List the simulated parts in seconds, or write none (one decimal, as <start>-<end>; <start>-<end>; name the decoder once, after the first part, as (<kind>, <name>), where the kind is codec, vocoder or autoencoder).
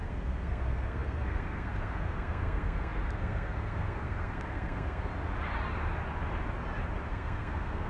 0.0-5.1 (codec, SNAC); 7.1-7.9